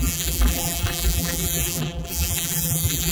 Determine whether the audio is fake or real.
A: fake